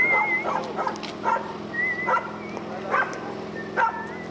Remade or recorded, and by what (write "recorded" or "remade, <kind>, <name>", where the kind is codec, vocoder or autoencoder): recorded